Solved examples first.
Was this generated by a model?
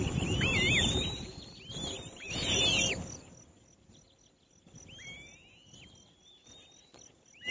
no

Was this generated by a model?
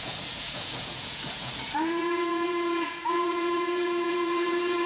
yes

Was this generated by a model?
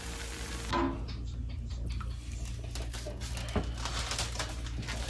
no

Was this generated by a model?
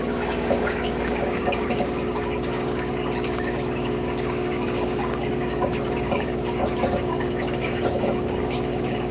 yes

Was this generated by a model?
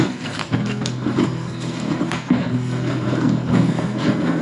yes